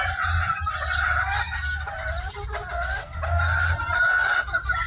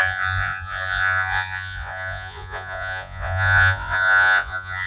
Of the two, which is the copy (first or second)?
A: second